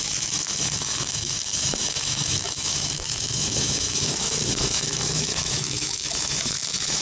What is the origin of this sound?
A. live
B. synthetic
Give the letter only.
B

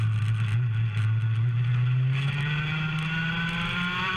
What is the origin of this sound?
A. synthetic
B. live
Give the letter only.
B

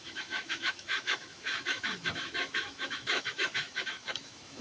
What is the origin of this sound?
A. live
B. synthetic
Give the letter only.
B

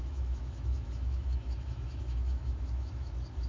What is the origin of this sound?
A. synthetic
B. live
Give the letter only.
A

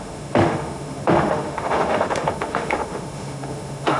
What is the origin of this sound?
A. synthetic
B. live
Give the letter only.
A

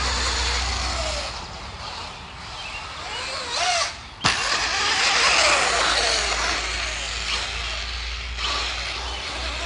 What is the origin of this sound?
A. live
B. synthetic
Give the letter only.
A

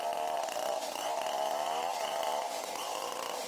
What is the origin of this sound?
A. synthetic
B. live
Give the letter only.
B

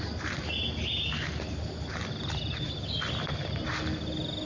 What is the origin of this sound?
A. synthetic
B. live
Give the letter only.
B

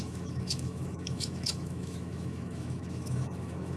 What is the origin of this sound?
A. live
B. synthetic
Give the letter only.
B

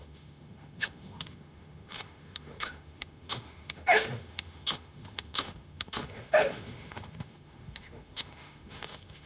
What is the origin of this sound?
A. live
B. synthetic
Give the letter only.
B